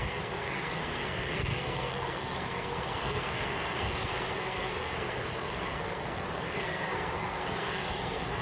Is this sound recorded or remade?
remade